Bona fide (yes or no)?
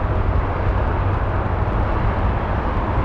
no